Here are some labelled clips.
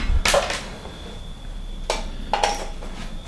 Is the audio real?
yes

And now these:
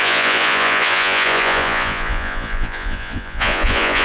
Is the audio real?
no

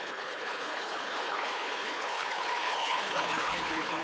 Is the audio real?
no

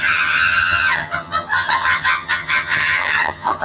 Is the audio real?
no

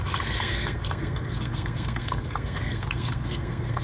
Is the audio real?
no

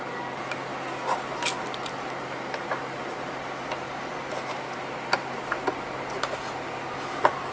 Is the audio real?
yes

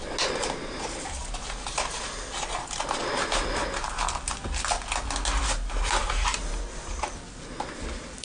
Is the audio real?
yes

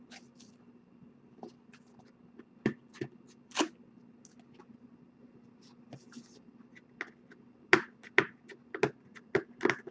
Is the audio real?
yes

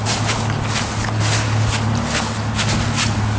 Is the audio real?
yes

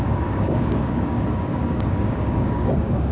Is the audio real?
no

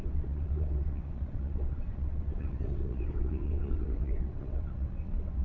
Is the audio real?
no